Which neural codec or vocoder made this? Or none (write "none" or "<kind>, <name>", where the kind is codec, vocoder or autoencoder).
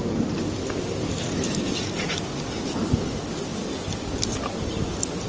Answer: none